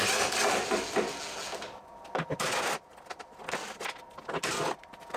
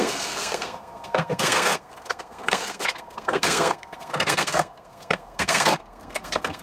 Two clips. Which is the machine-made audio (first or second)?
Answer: second